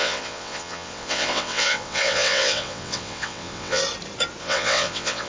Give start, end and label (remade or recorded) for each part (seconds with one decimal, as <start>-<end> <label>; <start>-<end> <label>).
0.0-3.8 remade; 3.8-4.4 recorded; 4.4-5.3 remade